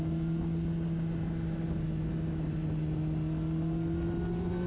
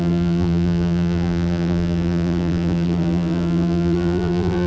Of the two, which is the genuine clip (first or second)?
first